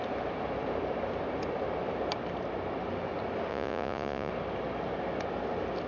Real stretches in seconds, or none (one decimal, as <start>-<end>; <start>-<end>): 0.0-3.5; 4.3-5.9

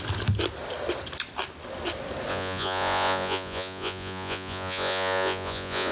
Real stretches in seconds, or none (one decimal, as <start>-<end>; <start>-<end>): 0.0-2.3

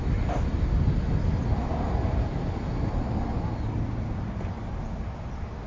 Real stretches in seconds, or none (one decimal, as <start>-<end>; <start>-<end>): 0.0-5.7

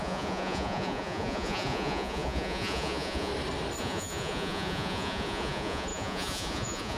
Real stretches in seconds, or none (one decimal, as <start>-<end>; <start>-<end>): 3.3-3.8

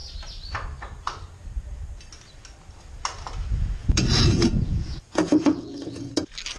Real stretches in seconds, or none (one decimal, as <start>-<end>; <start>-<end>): 0.0-3.8; 6.1-6.6

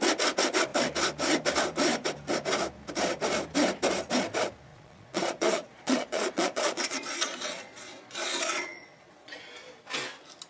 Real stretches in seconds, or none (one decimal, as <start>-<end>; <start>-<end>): 0.0-4.7; 9.4-10.5